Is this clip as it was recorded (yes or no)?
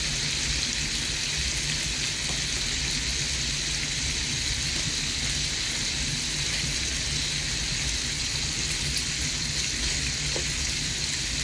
yes